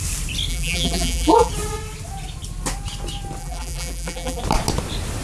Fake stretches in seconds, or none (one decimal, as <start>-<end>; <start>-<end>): 0.5-1.5; 3.4-4.4